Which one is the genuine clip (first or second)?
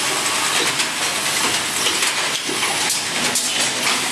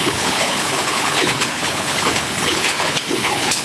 first